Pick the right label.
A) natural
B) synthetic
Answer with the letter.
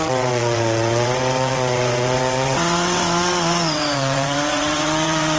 B